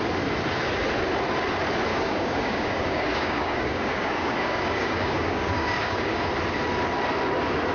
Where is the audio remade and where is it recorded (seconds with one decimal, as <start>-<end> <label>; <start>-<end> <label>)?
0.0-1.9 recorded; 1.9-6.3 remade; 6.3-7.7 recorded

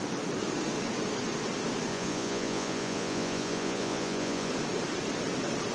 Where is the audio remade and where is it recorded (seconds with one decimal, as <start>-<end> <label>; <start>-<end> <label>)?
0.0-1.9 recorded; 1.9-4.5 remade; 4.5-5.7 recorded

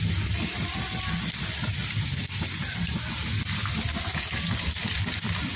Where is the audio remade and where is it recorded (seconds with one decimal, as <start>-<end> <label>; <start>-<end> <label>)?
0.0-5.6 recorded

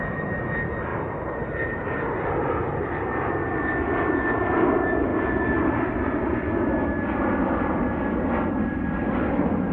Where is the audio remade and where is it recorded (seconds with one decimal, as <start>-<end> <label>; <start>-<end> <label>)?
0.0-9.7 recorded

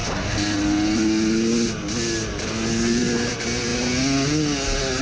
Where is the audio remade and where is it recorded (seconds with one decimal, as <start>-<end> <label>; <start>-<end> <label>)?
0.0-5.0 recorded

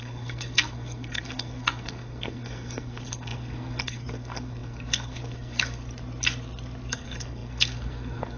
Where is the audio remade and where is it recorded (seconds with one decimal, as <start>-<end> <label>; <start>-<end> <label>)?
0.0-5.8 remade; 5.8-6.9 recorded; 6.9-8.4 remade

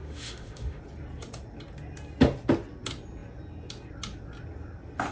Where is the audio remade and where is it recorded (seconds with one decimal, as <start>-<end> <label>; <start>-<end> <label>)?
0.0-0.8 remade; 0.8-5.1 recorded